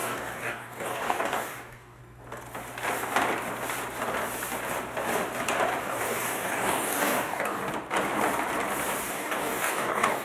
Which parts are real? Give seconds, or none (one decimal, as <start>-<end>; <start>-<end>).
2.0-5.8; 7.6-9.1